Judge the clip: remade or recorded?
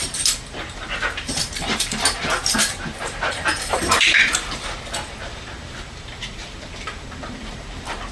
remade